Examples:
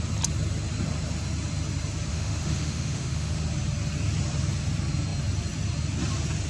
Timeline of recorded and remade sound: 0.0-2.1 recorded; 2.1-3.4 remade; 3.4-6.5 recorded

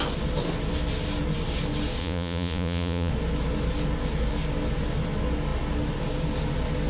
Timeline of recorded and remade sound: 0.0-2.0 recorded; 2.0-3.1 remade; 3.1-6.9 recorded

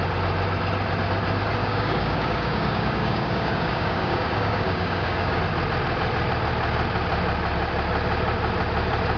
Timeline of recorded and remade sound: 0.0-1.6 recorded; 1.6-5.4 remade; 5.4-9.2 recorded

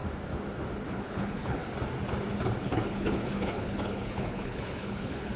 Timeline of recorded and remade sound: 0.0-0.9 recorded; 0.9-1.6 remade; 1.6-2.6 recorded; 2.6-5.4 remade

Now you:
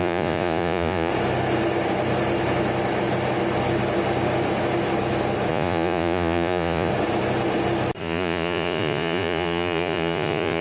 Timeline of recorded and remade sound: 0.0-1.1 remade; 1.1-5.5 recorded; 5.5-6.9 remade; 6.9-8.0 recorded; 8.0-10.6 remade